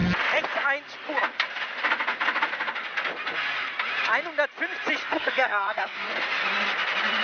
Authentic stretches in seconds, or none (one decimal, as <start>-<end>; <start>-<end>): 0.0-5.0; 6.1-7.2